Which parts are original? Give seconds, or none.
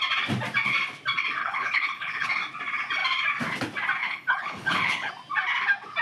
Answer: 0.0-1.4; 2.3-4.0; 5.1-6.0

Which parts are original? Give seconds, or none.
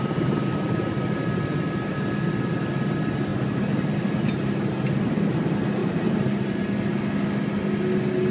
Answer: 0.0-8.3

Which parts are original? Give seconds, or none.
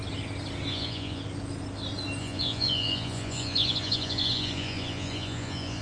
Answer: 0.0-0.7; 1.2-2.2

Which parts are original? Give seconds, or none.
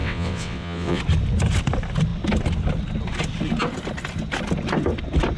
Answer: 1.0-5.4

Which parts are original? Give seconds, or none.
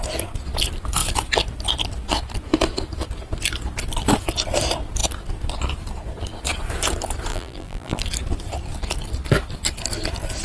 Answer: 0.0-7.3; 8.0-10.4